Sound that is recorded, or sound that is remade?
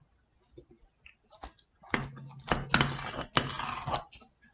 recorded